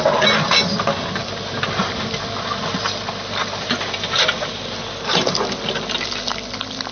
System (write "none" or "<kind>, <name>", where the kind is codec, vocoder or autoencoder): none